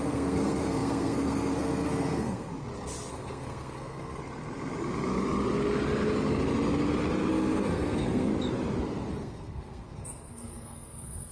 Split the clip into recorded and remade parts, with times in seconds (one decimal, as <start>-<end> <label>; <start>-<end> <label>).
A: 0.0-2.5 remade; 2.5-3.1 recorded; 3.1-4.2 remade; 4.2-7.3 recorded; 7.3-8.3 remade; 8.3-9.1 recorded; 9.1-11.3 remade